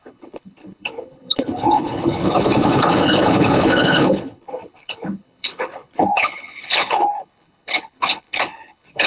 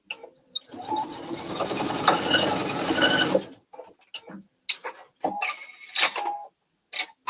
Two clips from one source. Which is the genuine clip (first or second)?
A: second